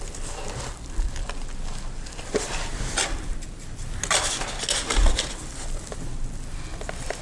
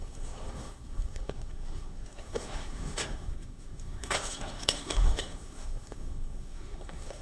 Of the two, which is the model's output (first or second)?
second